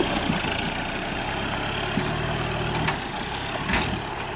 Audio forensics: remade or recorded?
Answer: recorded